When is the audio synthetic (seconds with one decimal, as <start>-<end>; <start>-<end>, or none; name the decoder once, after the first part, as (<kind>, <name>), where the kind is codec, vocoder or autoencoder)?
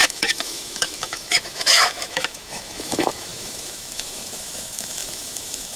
0.0-5.8 (autoencoder, DAC-VAE)